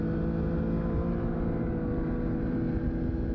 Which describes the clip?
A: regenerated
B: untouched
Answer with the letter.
B